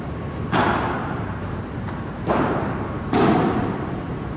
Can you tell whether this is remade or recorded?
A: remade